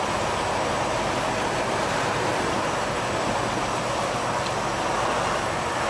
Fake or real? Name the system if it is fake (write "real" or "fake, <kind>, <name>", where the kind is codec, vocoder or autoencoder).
real